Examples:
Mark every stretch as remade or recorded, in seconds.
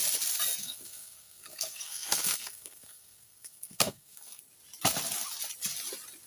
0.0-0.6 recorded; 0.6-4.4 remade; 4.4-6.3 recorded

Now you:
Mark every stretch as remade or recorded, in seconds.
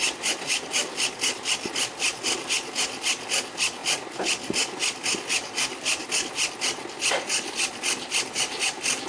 0.0-9.1 recorded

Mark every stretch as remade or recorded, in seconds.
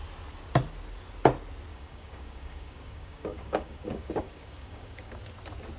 0.0-1.7 recorded; 1.7-5.2 remade; 5.2-5.8 recorded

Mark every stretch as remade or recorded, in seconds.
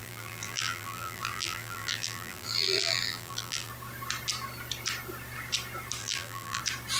0.0-3.7 remade; 3.7-6.0 recorded; 6.0-6.6 remade; 6.6-7.0 recorded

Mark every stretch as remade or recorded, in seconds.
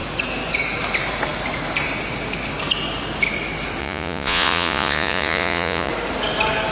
0.0-3.8 recorded; 3.8-5.9 remade; 5.9-6.7 recorded